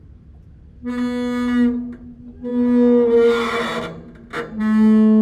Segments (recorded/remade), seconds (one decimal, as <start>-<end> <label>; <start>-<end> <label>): 0.0-5.2 recorded